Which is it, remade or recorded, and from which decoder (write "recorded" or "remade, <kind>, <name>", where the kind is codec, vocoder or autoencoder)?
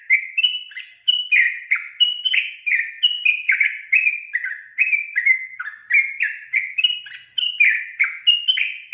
recorded